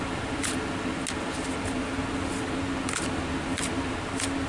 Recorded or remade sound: recorded